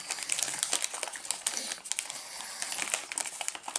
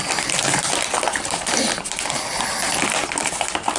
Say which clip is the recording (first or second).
first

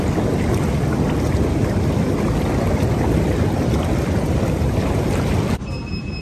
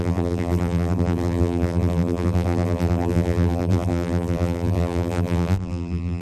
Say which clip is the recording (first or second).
first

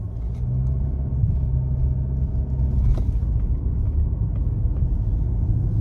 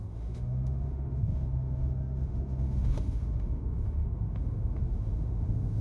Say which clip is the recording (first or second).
first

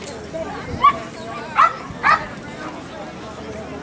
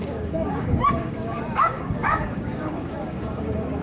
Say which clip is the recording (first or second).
first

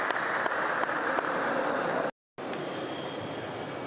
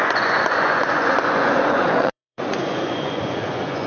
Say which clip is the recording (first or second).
first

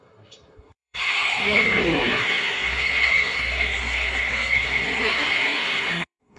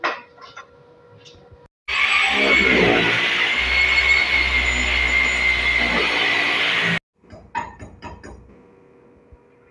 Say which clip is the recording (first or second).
second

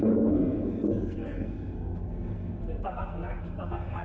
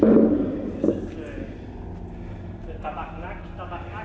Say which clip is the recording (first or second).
second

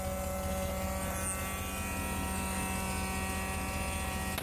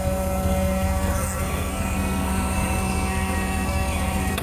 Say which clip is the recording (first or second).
first